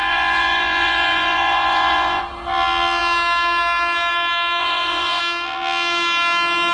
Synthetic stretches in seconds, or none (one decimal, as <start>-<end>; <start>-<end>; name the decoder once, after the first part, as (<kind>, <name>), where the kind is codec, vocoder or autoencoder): 0.0-2.2 (vocoder, Vocos); 4.6-5.2

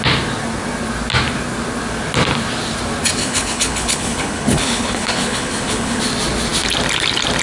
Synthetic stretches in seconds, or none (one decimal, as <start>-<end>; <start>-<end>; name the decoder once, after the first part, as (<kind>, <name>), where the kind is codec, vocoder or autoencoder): 3.2-6.0 (codec, HILCodec)

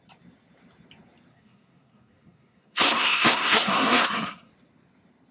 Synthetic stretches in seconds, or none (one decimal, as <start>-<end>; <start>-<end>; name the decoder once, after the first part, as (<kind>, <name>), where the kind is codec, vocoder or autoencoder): 1.3-4.5 (codec, SNAC)